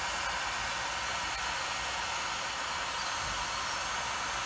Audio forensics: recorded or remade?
recorded